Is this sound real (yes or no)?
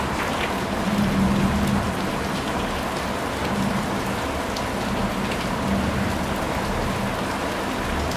yes